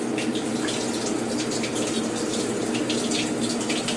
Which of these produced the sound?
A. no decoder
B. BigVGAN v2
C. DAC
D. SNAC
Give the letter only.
A